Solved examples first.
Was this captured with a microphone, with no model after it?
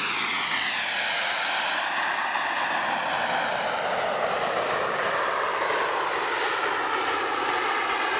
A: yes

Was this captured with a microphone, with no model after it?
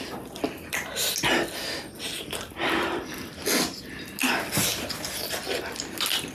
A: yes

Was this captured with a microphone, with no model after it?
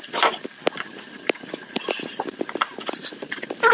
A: yes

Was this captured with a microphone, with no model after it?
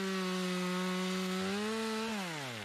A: yes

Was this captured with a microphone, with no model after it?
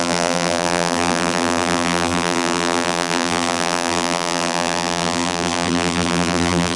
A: no